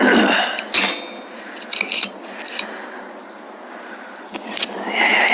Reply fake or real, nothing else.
real